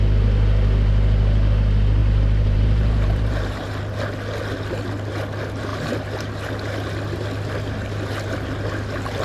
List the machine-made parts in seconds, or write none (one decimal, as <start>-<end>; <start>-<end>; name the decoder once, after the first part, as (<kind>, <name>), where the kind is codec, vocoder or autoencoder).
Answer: 2.0-3.8 (vocoder, BigVGAN v2)